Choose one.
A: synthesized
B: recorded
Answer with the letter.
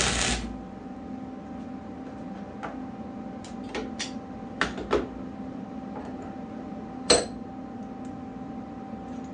B